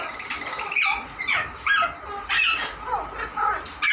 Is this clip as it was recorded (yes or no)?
yes